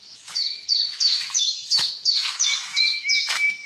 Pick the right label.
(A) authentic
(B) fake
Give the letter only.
B